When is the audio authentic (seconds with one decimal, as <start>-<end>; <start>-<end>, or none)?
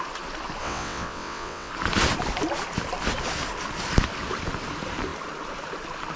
0.0-0.6; 1.7-6.2